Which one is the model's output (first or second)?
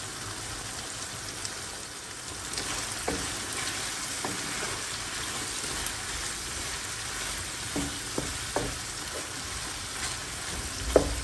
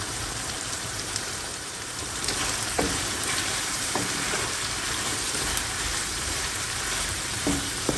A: second